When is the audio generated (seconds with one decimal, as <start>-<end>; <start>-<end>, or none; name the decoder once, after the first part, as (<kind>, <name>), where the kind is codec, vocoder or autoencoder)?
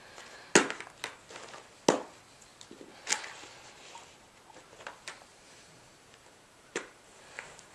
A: 5.3-7.7 (vocoder, BigVGAN v2)